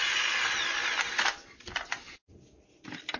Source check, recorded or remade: recorded